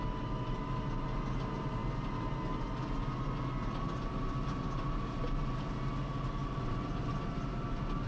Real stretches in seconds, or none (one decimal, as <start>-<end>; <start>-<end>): 0.0-6.4; 7.1-8.1